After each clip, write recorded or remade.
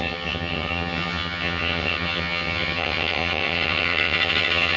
remade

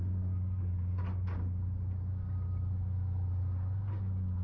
recorded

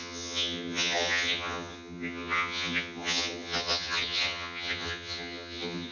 remade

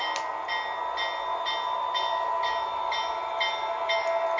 recorded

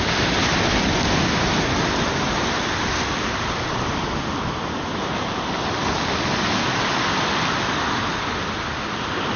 recorded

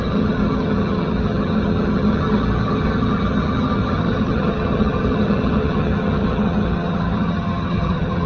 remade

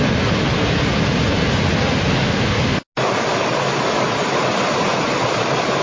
recorded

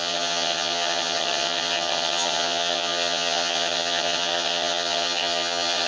remade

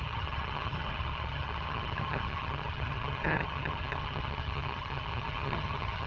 remade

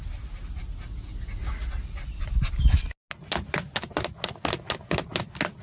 recorded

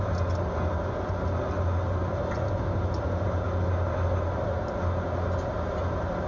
recorded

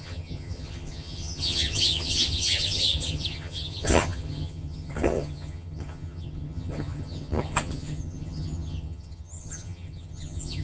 remade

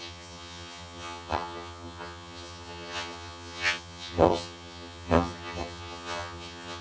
remade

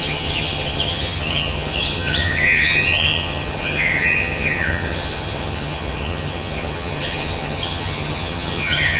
remade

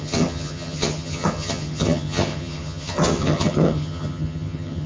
remade